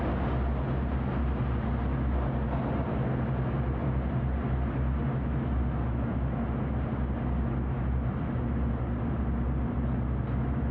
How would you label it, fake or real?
real